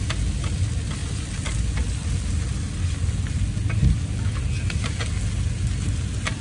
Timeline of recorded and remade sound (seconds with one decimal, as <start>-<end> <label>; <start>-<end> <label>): 0.0-6.4 recorded